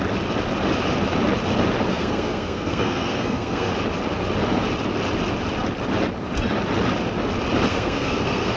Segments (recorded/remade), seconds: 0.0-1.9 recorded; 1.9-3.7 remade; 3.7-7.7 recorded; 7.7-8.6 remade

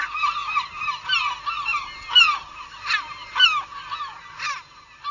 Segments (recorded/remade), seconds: 0.0-5.1 recorded